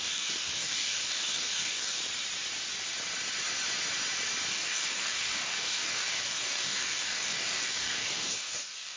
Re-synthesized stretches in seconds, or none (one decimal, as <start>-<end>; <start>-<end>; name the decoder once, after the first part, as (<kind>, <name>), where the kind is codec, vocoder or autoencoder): 0.0-2.0 (codec, DAC); 4.5-9.0